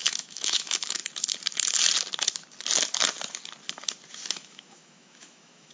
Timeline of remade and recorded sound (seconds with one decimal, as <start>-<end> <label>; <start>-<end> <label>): 0.0-1.0 remade; 1.0-4.3 recorded; 4.3-5.7 remade